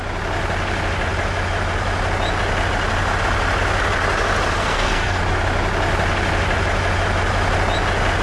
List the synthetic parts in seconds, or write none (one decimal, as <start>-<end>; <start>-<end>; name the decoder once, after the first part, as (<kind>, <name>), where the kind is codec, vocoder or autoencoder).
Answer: 4.6-5.2 (codec, SNAC)